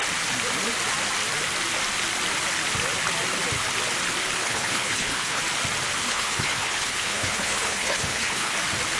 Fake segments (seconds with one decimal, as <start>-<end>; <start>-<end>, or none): 4.4-5.4; 6.0-8.5